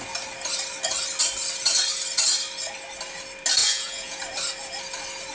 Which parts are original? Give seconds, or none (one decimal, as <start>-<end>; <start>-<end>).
0.0-3.6; 4.2-5.3